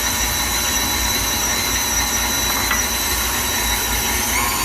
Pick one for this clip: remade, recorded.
recorded